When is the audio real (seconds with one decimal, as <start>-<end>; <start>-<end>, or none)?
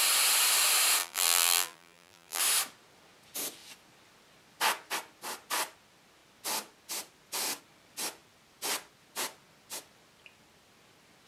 0.0-1.0; 2.4-11.3